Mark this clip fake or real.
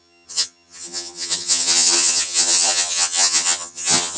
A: fake